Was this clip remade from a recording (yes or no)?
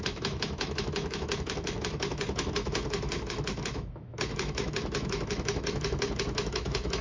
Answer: yes